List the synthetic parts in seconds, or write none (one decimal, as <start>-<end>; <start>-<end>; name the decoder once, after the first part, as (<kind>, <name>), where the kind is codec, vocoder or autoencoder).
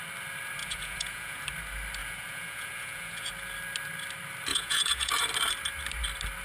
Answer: 0.6-1.4 (vocoder, Vocos); 2.0-3.3; 4.5-5.1